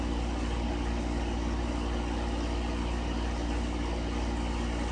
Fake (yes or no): no